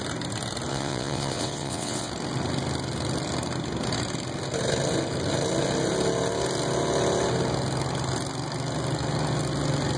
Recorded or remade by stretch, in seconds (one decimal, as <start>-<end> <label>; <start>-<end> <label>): 0.0-0.7 recorded; 0.7-2.1 remade; 2.1-10.0 recorded